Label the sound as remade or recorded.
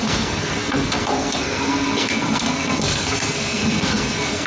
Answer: remade